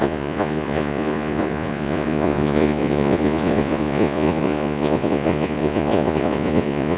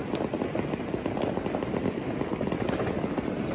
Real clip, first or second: second